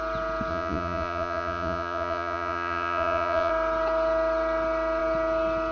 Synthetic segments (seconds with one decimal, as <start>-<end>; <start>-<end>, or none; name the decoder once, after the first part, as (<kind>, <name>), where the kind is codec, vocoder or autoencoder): 0.5-3.5 (vocoder, Vocos)